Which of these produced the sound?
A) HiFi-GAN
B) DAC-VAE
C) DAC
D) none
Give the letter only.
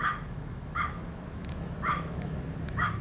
B